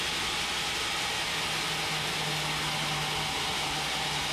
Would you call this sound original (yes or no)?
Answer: yes